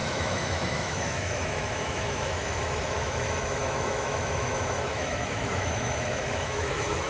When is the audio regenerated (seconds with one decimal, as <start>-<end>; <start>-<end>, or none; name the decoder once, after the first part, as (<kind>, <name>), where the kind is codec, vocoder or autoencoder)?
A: 0.0-7.1 (autoencoder, DAC-VAE)